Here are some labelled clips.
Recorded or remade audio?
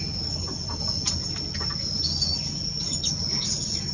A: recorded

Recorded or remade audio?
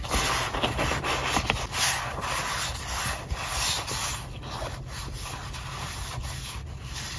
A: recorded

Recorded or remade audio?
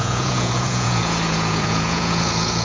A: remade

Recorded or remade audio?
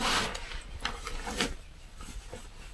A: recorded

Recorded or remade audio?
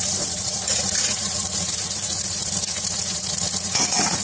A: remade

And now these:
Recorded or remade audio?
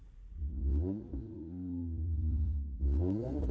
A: remade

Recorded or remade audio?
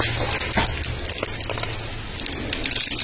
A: recorded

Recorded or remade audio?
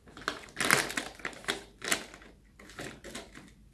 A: recorded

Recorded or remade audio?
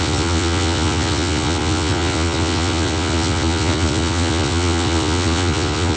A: remade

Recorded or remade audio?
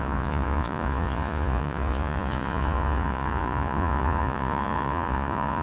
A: remade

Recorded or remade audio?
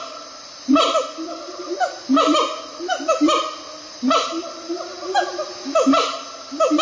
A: recorded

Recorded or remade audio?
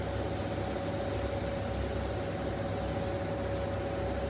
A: recorded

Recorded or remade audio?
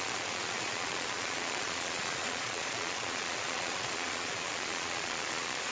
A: remade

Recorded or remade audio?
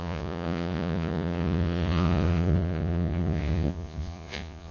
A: remade